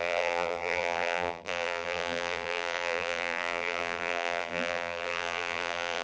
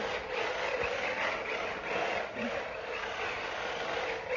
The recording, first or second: second